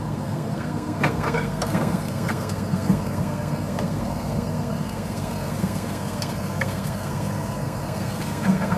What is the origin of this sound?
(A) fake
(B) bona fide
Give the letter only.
A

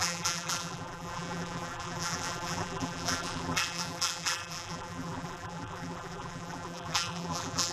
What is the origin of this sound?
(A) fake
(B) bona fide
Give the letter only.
A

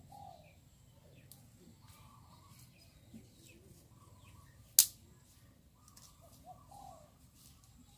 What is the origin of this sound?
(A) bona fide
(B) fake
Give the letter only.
A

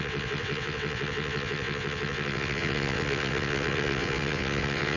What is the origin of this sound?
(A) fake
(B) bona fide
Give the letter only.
A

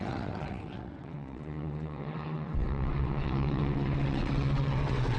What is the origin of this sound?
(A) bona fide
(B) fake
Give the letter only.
B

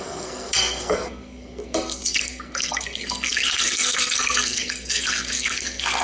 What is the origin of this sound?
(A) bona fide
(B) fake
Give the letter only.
B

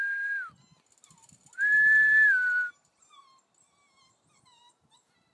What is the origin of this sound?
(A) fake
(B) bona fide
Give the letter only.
B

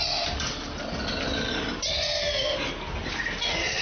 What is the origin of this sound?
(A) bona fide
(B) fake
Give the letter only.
A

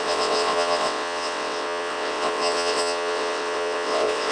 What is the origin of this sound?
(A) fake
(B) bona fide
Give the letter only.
A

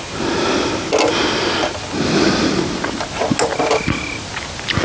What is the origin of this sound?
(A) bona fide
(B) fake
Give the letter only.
A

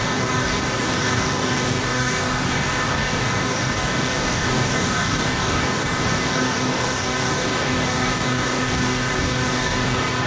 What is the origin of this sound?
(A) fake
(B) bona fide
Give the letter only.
A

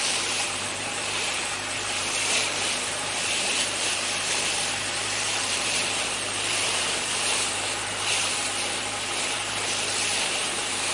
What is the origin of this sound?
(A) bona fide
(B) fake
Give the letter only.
B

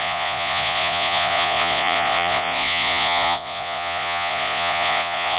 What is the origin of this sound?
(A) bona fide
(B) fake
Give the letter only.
B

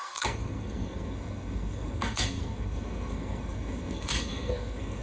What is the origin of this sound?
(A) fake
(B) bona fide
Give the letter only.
A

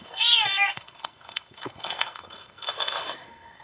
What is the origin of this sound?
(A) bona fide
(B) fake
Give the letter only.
B